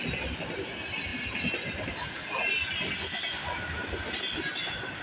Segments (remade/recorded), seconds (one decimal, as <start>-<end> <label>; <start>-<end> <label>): 0.0-5.0 recorded